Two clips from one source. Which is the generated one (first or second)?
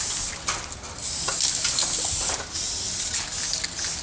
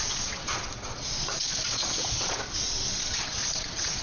second